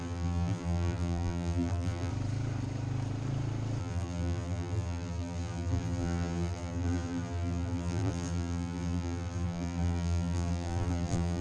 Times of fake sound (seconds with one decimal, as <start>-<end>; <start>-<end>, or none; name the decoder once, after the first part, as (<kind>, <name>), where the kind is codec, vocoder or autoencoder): 0.0-2.1 (vocoder, BigVGAN v2); 3.8-11.4